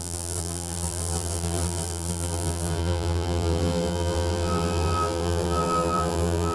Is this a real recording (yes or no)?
no